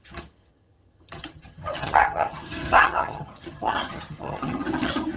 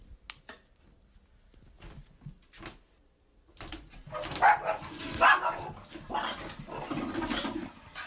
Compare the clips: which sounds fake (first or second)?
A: first